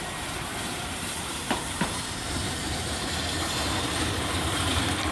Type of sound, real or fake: fake